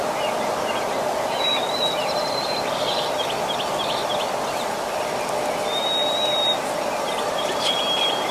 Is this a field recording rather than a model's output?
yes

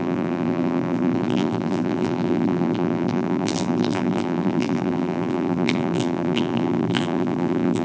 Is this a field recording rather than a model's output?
no